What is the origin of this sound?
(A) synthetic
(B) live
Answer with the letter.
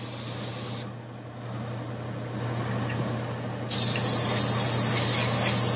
B